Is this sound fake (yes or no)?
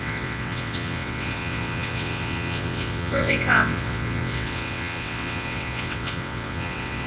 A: yes